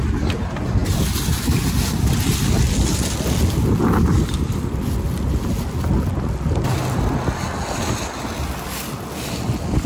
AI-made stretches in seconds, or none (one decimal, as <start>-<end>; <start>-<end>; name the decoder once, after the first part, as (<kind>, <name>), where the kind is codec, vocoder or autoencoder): none